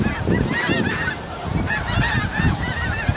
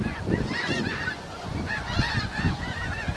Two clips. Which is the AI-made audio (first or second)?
second